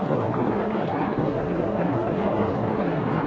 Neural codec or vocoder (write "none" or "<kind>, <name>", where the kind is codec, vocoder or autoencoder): codec, SNAC